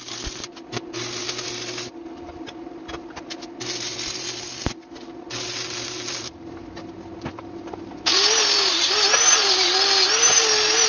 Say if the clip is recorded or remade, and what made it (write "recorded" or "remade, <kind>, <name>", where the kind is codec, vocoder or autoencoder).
recorded